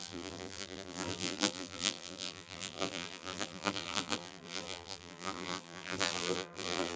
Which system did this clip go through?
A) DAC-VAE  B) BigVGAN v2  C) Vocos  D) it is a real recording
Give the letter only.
B